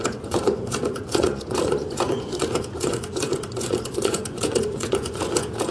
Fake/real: fake